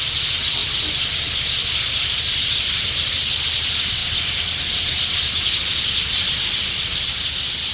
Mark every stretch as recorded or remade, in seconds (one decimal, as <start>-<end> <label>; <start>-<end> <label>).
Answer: 0.0-7.7 recorded